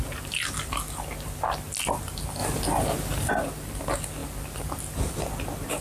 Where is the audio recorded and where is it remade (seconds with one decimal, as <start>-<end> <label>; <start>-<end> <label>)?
0.0-5.8 recorded